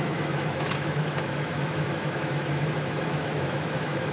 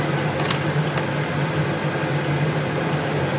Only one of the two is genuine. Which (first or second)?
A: second